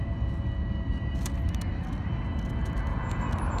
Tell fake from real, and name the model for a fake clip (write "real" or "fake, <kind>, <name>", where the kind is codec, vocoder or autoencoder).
real